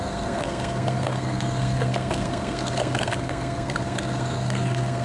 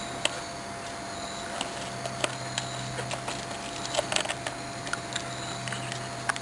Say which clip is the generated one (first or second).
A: first